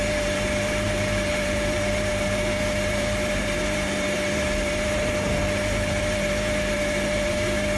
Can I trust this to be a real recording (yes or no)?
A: no